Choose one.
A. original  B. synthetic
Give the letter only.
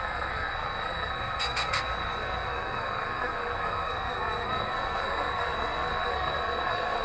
B